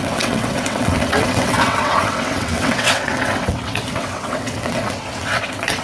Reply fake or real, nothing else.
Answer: fake